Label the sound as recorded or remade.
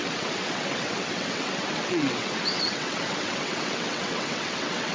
remade